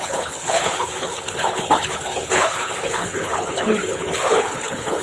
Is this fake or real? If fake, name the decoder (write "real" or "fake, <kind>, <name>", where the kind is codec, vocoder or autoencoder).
fake, codec, HILCodec